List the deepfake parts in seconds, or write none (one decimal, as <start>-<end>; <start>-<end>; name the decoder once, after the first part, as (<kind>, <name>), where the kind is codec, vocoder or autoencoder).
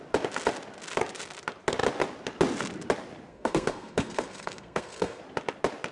3.3-5.2 (codec, SNAC)